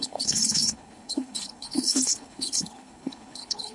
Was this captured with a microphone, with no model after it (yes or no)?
no